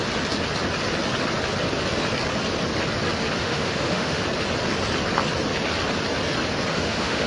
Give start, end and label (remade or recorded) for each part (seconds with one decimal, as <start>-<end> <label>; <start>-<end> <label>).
0.0-3.4 recorded; 3.4-4.2 remade; 4.2-6.7 recorded; 6.7-7.3 remade

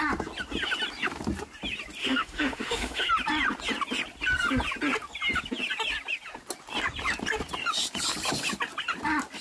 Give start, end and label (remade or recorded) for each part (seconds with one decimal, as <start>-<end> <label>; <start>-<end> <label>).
0.0-2.0 recorded; 2.0-3.1 remade; 3.1-9.4 recorded

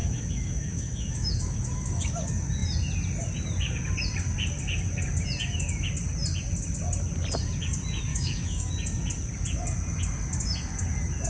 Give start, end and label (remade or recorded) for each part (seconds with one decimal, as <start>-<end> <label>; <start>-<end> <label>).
0.0-2.1 remade; 2.1-8.1 recorded; 8.1-8.7 remade; 8.7-11.3 recorded

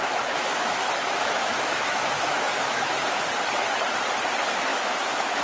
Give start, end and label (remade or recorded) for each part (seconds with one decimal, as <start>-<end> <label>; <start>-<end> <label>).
0.0-3.2 remade; 3.2-4.7 recorded; 4.7-5.4 remade

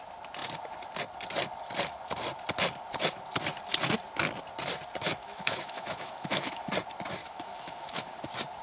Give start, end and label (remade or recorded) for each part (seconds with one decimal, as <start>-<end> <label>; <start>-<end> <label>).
0.0-5.2 recorded; 5.2-6.7 remade; 6.7-7.2 recorded; 7.2-8.1 remade; 8.1-8.6 recorded